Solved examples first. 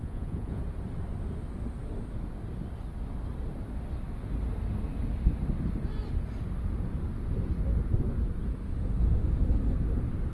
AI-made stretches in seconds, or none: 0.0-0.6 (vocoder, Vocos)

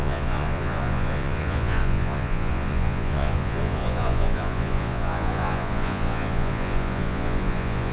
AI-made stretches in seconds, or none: 0.0-7.9 (vocoder, Vocos)

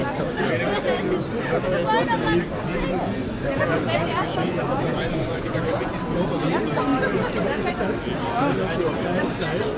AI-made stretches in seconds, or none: 4.3-5.9 (vocoder, Vocos)

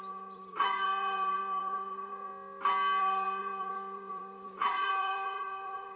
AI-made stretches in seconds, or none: 0.0-2.3 (vocoder, Vocos); 3.0-6.0